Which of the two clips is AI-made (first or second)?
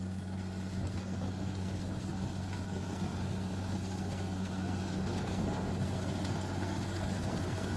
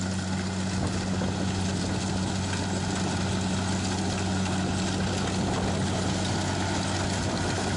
first